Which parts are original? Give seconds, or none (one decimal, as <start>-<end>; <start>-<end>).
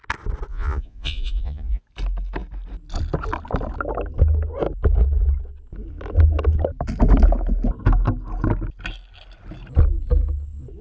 0.0-0.5; 1.8-10.8